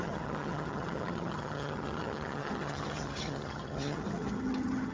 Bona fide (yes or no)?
no